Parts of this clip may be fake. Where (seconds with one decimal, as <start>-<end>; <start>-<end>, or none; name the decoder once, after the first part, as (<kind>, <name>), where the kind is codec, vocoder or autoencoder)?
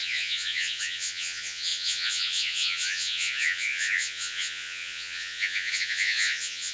0.0-6.7 (vocoder, Vocos)